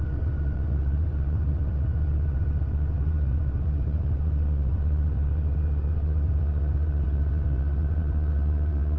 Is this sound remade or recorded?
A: remade